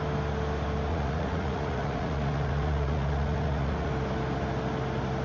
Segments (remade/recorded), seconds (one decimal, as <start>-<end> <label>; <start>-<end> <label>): 0.0-0.9 recorded; 0.9-3.9 remade; 3.9-5.2 recorded

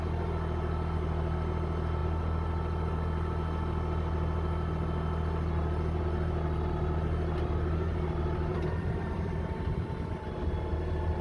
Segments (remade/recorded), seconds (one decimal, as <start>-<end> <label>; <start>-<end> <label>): 0.0-8.5 recorded; 8.5-10.2 remade; 10.2-11.2 recorded